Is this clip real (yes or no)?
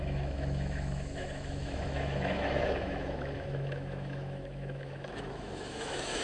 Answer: no